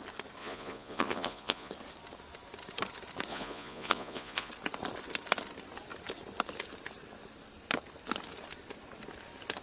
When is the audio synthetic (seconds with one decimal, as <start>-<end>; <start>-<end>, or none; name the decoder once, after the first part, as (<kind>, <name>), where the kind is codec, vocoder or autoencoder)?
0.4-1.7 (vocoder, Vocos); 3.3-4.5